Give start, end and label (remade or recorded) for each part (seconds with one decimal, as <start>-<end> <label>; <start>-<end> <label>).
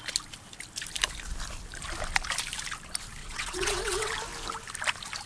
0.0-3.2 recorded; 3.2-4.1 remade; 4.1-5.3 recorded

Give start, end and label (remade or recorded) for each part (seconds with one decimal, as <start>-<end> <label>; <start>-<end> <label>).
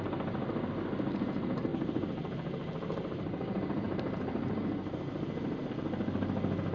0.0-1.7 recorded; 1.7-5.7 remade; 5.7-6.7 recorded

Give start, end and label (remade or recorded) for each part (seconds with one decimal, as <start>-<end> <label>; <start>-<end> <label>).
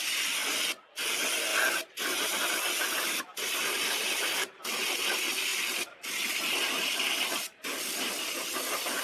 0.0-0.4 remade; 0.4-0.9 recorded; 0.9-1.5 remade; 1.5-2.5 recorded; 2.5-9.0 remade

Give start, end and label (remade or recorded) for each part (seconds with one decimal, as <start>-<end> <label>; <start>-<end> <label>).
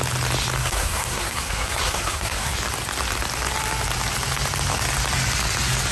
0.0-0.6 recorded; 0.6-2.5 remade; 2.5-5.9 recorded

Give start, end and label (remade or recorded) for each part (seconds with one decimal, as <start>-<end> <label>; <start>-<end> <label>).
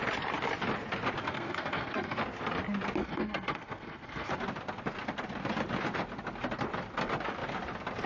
0.0-1.2 recorded; 1.2-2.2 remade; 2.2-3.0 recorded; 3.0-4.3 remade; 4.3-8.1 recorded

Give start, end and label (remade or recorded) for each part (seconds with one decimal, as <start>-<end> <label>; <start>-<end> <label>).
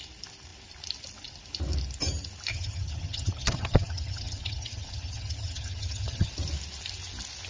0.0-2.5 recorded; 2.5-6.3 remade; 6.3-7.5 recorded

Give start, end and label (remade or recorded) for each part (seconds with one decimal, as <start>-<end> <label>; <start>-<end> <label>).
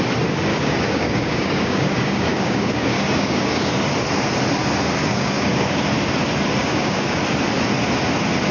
0.0-0.5 recorded; 0.5-3.7 remade; 3.7-5.0 recorded; 5.0-5.8 remade; 5.8-6.6 recorded; 6.6-7.2 remade; 7.2-8.5 recorded